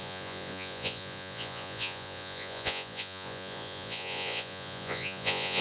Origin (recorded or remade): remade